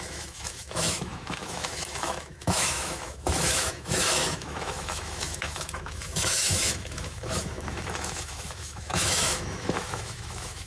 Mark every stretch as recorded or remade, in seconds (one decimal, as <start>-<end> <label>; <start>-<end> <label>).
0.0-10.7 remade

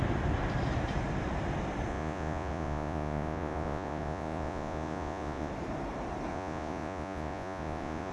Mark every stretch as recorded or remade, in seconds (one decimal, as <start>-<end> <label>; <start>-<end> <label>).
0.0-1.9 recorded; 1.9-5.5 remade; 5.5-6.3 recorded; 6.3-8.1 remade

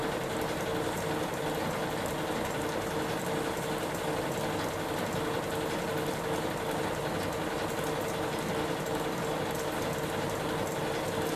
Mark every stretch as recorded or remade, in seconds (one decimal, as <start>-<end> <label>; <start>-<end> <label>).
0.0-11.4 recorded

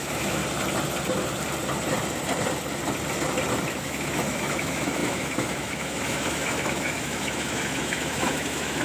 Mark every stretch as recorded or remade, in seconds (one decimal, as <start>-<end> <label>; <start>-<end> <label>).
0.0-0.4 remade; 0.4-3.8 recorded; 3.8-8.8 remade

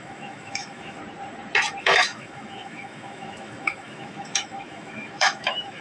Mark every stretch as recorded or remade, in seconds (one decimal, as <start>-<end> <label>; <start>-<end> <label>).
0.0-1.0 remade; 1.0-1.8 recorded; 1.8-5.8 remade

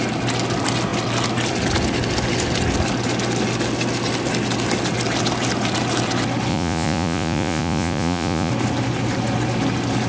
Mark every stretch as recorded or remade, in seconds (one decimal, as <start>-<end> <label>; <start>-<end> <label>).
0.0-6.5 recorded; 6.5-8.5 remade; 8.5-10.1 recorded